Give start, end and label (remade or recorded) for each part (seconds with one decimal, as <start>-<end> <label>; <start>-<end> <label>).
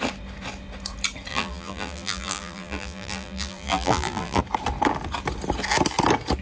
0.0-1.3 recorded; 1.3-4.4 remade; 4.4-6.4 recorded